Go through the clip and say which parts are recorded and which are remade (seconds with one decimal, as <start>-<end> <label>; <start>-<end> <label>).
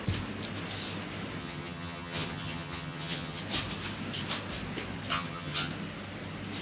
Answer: 0.0-1.4 recorded; 1.4-3.4 remade; 3.4-5.1 recorded; 5.1-5.7 remade; 5.7-6.6 recorded